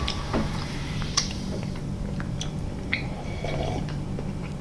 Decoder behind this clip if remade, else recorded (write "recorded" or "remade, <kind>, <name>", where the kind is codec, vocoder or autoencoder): remade, vocoder, BigVGAN v2